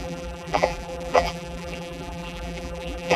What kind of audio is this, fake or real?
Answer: fake